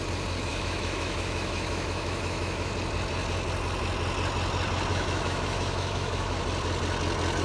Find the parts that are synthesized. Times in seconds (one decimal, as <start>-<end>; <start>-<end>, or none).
0.5-2.7; 4.9-6.4